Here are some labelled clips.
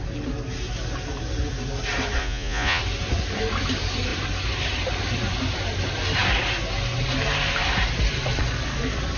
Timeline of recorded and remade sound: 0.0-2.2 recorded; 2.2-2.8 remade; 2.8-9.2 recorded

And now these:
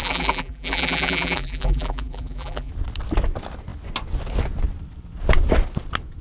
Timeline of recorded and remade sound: 0.0-2.7 remade; 2.7-6.2 recorded

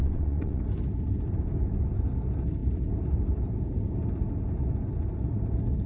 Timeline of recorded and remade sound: 0.0-0.6 remade; 0.6-5.9 recorded